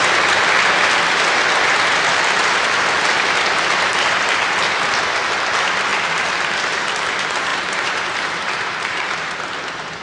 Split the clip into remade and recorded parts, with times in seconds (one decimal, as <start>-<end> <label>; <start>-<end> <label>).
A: 0.0-7.5 recorded; 7.5-9.3 remade; 9.3-10.0 recorded